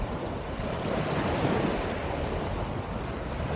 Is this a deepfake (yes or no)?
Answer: no